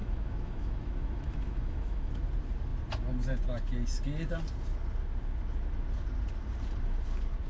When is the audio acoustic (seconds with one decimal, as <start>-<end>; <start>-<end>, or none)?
2.1-7.5